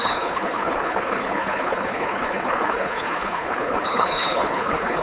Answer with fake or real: fake